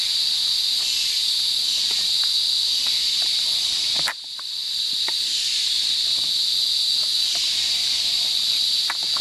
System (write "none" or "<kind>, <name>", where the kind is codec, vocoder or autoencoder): none